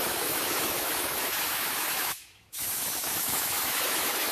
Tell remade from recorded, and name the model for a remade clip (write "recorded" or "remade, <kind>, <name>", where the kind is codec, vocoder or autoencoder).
remade, autoencoder, DAC-VAE